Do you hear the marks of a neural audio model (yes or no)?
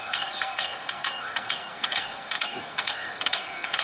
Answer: yes